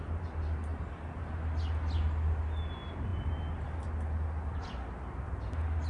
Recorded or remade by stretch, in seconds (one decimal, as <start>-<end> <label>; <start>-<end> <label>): 0.0-5.9 recorded